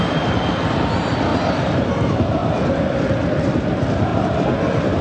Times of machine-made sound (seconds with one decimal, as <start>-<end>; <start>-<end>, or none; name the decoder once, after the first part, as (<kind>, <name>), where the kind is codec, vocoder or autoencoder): 1.3-1.9 (vocoder, BigVGAN v2); 2.4-3.1